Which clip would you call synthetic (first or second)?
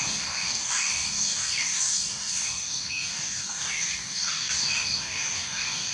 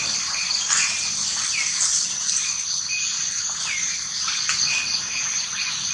first